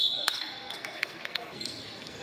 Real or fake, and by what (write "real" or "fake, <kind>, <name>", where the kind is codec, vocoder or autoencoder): fake, codec, SNAC